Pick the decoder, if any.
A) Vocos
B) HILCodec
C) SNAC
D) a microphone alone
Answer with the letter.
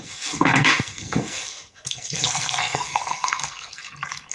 C